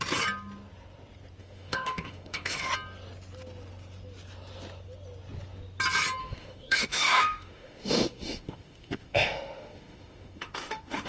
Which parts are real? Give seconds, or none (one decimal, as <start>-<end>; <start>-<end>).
0.0-1.4; 2.7-6.2